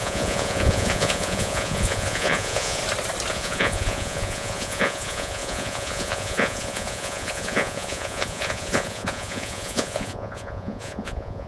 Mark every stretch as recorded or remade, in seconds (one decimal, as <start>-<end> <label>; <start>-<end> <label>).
0.0-2.8 remade; 2.8-3.3 recorded; 3.3-11.5 remade